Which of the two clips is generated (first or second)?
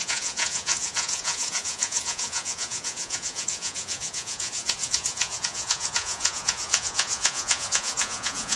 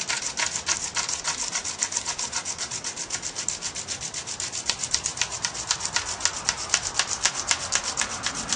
first